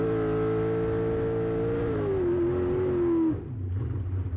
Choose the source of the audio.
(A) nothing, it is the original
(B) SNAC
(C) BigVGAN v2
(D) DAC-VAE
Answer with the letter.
A